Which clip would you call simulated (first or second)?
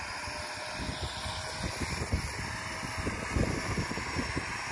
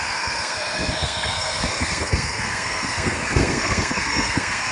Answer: second